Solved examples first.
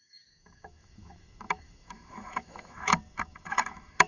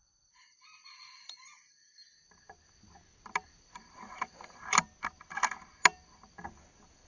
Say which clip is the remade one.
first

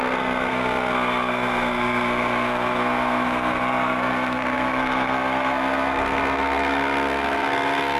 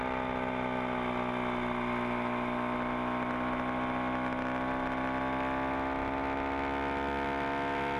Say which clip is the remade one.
first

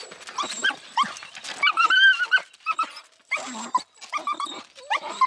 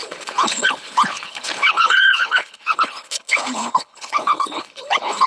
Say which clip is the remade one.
second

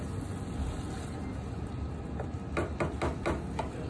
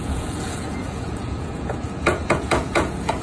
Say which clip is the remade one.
second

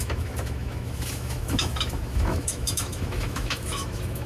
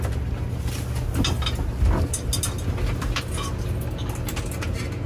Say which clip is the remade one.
first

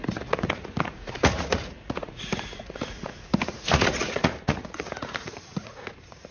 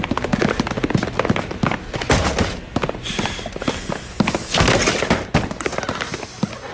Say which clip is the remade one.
first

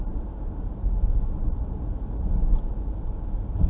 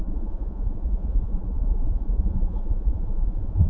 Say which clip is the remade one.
second